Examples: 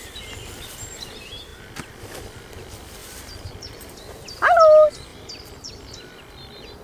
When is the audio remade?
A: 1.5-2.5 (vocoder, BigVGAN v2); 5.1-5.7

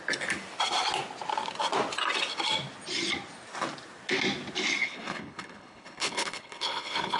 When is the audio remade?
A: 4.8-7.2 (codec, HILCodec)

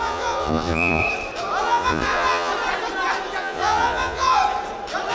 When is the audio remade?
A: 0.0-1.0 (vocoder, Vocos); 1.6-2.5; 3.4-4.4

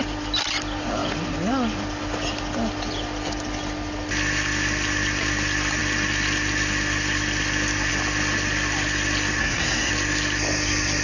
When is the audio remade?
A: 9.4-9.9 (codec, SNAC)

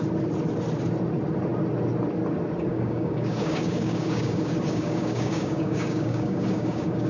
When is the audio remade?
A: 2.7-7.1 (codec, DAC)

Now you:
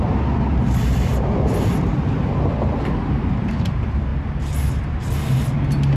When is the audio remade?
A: 1.1-2.2 (vocoder, BigVGAN v2)